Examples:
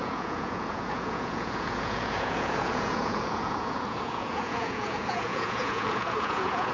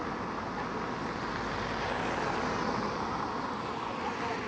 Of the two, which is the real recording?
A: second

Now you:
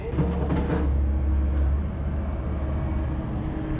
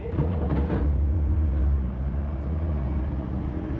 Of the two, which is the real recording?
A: first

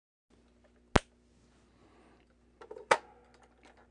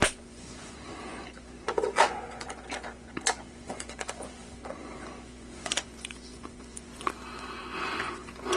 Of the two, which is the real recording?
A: first